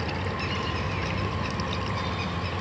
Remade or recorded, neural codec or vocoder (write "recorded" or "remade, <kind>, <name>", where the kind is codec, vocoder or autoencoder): recorded